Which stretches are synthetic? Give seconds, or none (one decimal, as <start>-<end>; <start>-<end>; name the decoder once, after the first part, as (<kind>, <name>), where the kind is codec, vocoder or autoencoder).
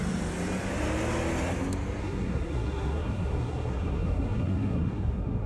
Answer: 2.0-5.5 (codec, SNAC)